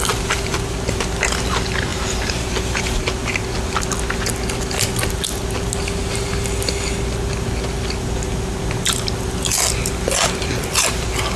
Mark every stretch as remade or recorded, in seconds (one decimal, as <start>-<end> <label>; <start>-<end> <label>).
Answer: 0.0-1.9 recorded; 1.9-2.8 remade; 2.8-11.4 recorded